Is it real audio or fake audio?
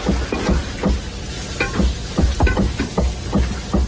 real